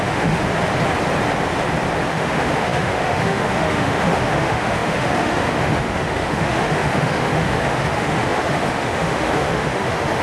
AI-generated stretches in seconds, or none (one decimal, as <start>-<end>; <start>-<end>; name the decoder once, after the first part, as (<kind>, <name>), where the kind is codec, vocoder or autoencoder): 0.0-0.4 (autoencoder, DAC-VAE); 2.1-10.2